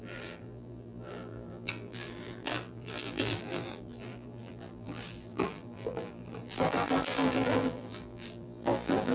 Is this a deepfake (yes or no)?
yes